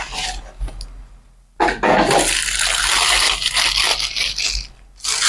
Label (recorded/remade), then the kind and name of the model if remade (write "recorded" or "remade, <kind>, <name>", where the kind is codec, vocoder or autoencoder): recorded